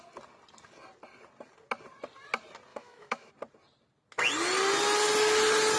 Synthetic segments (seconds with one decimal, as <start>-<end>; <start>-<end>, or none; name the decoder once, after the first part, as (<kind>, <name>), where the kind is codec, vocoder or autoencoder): 2.7-3.3 (autoencoder, DAC-VAE)